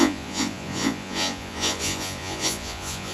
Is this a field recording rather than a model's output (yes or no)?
no